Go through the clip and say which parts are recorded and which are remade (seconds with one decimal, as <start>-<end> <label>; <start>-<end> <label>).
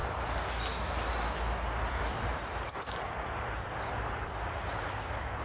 0.0-1.9 recorded; 1.9-5.4 remade